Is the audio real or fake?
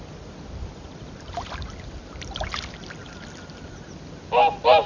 real